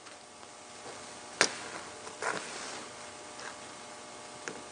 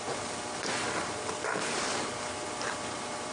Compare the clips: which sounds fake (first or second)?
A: second